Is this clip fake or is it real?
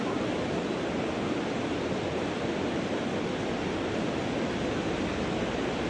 real